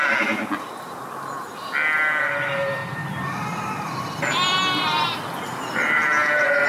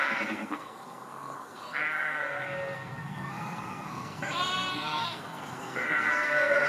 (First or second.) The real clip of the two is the first